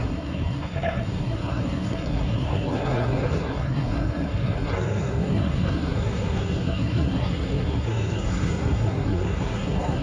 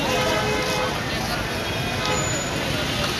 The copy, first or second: first